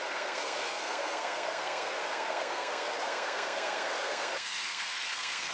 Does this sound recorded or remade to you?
remade